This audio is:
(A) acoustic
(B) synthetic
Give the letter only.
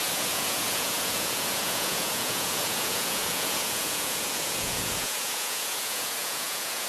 B